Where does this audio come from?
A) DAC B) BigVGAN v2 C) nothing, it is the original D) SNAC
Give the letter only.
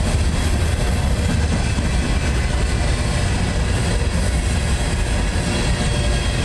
C